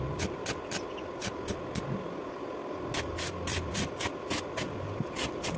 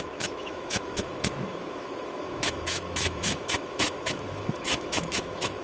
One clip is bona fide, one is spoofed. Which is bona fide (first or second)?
first